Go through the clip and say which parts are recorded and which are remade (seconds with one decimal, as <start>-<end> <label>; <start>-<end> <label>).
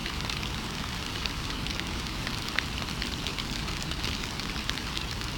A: 0.0-2.5 remade; 2.5-3.3 recorded; 3.3-5.4 remade